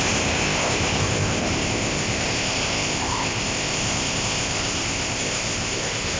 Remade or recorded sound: remade